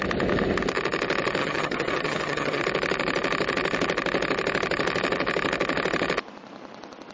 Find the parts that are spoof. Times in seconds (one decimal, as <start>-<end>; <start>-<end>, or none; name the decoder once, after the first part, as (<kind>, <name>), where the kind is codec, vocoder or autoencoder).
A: 1.4-2.6 (vocoder, HiFi-GAN)

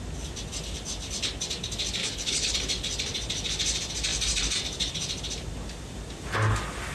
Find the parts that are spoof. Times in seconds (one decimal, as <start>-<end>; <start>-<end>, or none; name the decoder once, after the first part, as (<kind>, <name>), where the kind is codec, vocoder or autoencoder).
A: 2.0-2.5 (codec, HILCodec)

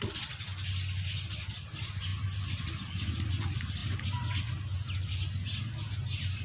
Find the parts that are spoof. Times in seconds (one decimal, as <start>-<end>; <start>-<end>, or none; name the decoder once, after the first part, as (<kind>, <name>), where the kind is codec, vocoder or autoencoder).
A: none

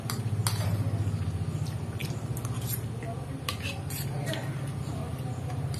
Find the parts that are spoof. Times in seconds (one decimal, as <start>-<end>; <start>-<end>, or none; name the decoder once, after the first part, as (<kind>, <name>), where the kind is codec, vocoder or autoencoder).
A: none

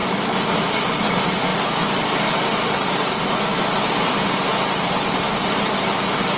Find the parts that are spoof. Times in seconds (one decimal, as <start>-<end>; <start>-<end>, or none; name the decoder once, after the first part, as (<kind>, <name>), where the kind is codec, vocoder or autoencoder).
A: none

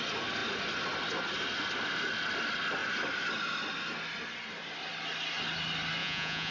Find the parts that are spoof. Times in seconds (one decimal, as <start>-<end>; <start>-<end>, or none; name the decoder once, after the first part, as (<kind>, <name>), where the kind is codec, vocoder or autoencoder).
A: 6.0-6.5 (vocoder, Vocos)

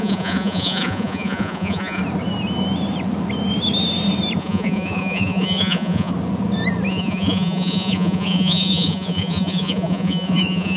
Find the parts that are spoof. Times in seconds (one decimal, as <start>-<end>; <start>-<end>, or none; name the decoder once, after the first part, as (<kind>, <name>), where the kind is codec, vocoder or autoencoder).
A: 0.0-2.0 (vocoder, Vocos); 4.4-6.1; 6.9-10.8

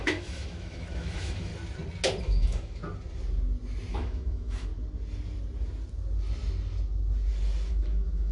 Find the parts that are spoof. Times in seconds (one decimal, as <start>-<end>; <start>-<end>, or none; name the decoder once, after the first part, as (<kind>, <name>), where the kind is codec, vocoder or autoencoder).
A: 0.0-1.5 (autoencoder, DAC-VAE); 2.2-2.8; 3.9-4.7; 7.7-8.3